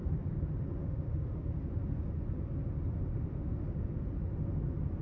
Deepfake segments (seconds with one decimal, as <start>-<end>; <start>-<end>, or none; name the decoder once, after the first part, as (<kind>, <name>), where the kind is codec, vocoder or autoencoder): 0.8-1.5 (autoencoder, DAC-VAE); 3.1-3.7

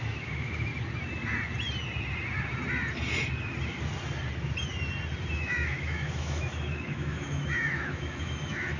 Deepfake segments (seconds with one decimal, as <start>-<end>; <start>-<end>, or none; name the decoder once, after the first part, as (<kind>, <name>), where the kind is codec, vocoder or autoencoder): 0.0-0.7 (autoencoder, DAC-VAE); 5.3-8.8

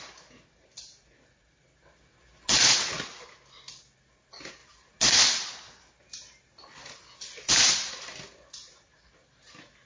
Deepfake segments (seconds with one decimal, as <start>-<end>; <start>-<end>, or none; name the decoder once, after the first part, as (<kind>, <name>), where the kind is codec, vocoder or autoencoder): none

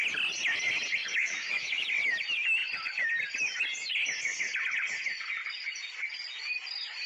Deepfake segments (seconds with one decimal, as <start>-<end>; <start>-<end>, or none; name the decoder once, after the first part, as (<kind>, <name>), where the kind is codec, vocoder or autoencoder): 1.1-1.9 (autoencoder, DAC-VAE)

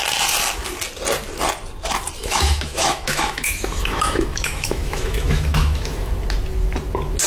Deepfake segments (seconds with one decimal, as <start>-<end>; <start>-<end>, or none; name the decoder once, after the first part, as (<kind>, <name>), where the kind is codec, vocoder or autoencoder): 2.2-6.1 (autoencoder, DAC-VAE)